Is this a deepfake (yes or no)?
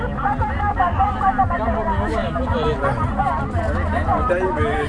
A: no